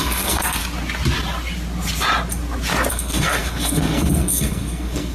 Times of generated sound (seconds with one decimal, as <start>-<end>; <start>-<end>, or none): 0.0-0.6; 2.9-5.1